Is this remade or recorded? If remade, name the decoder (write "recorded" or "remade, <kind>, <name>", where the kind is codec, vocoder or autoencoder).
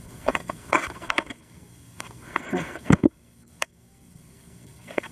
remade, codec, SNAC